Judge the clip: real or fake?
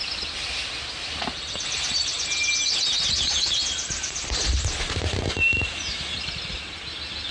real